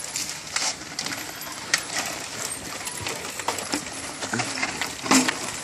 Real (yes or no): yes